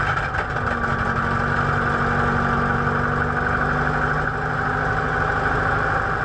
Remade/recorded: recorded